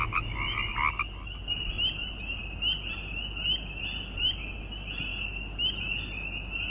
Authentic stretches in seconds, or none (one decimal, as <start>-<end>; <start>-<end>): 0.0-6.7